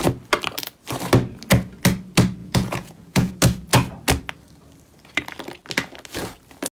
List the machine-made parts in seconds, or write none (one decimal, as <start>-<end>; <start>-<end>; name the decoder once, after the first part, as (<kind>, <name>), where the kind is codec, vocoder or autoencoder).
2.4-3.3 (vocoder, Vocos)